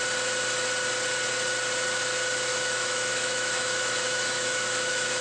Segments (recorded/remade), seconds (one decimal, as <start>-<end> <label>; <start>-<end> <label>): 0.0-2.5 recorded; 2.5-5.2 remade